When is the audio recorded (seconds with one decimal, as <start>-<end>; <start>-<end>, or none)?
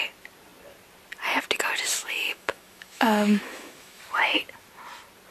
0.0-2.0; 4.0-5.3